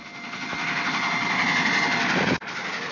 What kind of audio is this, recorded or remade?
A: recorded